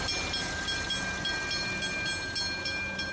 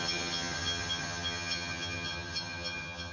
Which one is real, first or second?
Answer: first